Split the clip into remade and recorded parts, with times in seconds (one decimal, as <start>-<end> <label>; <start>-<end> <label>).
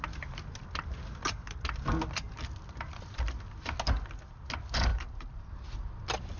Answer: 0.0-6.4 recorded